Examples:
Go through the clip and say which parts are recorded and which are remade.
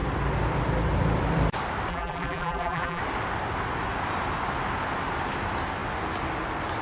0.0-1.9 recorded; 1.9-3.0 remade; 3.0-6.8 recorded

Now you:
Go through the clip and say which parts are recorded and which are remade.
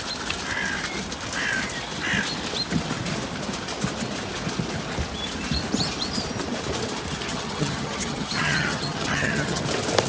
0.0-7.3 recorded; 7.3-9.6 remade; 9.6-10.1 recorded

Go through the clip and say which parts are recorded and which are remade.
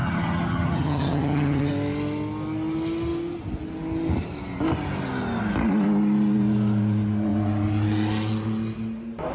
0.0-1.7 remade; 1.7-9.3 recorded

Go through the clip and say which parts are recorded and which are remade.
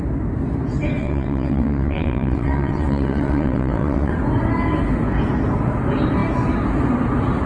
0.0-1.0 recorded; 1.0-4.1 remade; 4.1-7.5 recorded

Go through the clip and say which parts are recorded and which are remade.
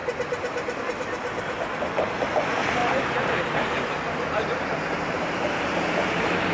0.0-0.8 remade; 0.8-2.8 recorded; 2.8-6.5 remade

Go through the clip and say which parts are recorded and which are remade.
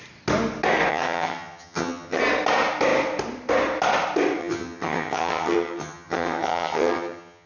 0.0-0.9 recorded; 0.9-2.2 remade; 2.2-4.4 recorded; 4.4-7.5 remade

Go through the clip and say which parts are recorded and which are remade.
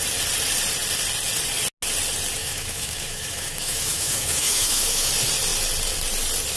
0.0-2.4 recorded; 2.4-5.1 remade; 5.1-6.6 recorded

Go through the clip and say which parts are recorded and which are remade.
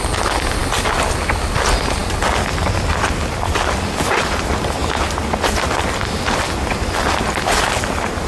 0.0-8.3 recorded